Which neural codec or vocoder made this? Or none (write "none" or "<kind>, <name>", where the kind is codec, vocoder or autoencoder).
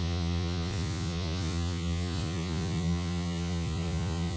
vocoder, Vocos